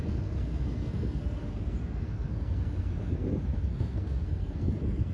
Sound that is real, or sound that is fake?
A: fake